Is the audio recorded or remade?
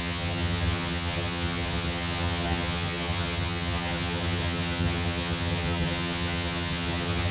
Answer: remade